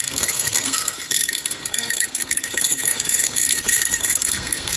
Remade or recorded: remade